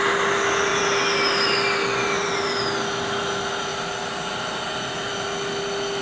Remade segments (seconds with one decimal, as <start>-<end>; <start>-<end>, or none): none